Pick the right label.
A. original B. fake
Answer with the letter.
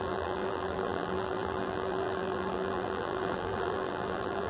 B